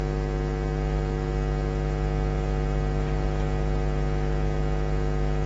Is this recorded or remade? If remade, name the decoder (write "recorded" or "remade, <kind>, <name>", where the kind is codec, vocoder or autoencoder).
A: recorded